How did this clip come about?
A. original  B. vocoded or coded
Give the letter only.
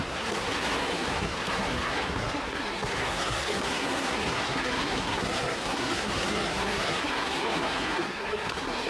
B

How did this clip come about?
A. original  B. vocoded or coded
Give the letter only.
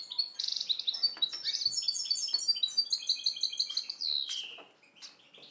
A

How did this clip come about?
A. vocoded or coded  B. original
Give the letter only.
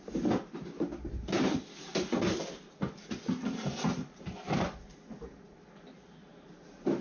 B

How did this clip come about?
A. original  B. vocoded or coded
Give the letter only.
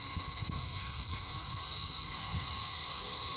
B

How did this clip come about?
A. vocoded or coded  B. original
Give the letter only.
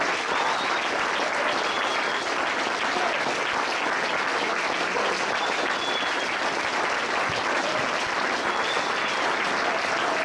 B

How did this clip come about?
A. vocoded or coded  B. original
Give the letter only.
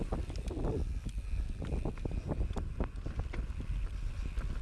B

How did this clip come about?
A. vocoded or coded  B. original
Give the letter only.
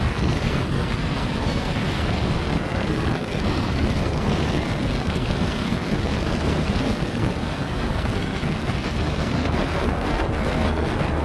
A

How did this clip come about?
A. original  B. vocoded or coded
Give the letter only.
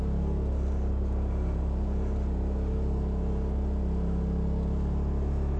A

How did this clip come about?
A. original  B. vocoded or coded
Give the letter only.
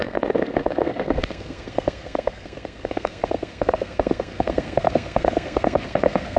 B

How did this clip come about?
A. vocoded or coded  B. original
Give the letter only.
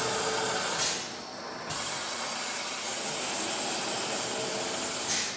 B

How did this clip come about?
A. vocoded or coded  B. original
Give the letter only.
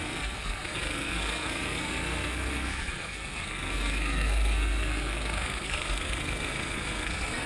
A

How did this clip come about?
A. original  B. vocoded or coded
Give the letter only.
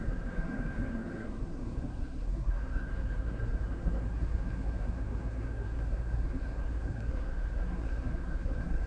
B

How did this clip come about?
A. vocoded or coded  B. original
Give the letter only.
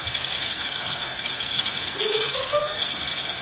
A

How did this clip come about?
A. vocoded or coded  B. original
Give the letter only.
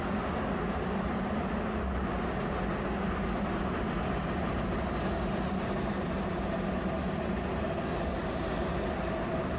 B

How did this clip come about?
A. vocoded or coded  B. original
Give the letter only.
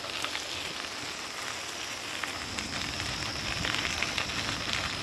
B